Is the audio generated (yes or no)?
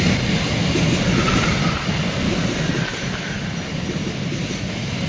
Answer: no